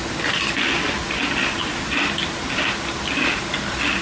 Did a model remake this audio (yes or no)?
no